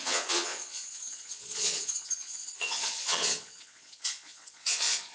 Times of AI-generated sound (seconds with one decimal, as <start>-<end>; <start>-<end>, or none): 0.0-5.1